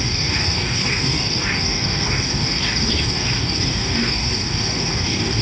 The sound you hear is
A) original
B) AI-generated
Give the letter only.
B